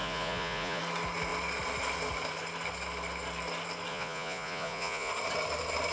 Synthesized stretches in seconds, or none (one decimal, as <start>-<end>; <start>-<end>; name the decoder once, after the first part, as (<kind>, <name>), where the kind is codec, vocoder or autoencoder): 0.0-0.8 (vocoder, Vocos); 3.9-5.1